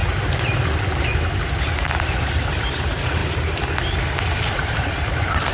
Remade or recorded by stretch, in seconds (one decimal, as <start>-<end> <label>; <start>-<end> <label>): 0.0-1.6 recorded; 1.6-3.2 remade; 3.2-4.2 recorded; 4.2-5.5 remade